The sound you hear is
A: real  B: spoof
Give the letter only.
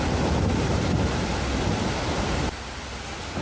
A